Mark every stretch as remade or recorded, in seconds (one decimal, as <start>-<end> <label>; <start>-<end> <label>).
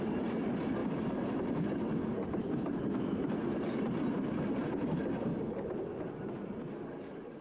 0.0-7.4 recorded